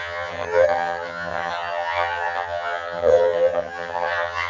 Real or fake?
fake